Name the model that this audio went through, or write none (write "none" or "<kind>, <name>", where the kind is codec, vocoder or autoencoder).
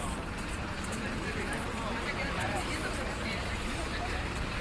vocoder, BigVGAN v2